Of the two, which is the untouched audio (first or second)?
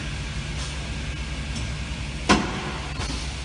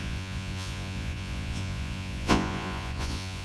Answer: first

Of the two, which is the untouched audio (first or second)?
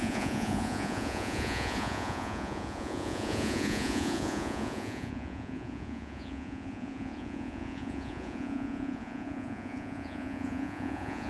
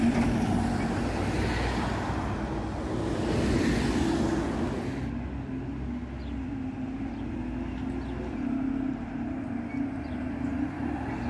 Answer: second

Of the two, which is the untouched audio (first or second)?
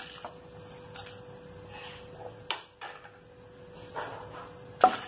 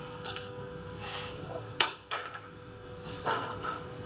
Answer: first